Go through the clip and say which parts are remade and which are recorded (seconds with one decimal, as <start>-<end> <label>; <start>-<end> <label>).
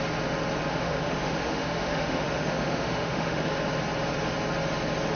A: 0.0-0.7 recorded; 0.7-3.5 remade; 3.5-5.2 recorded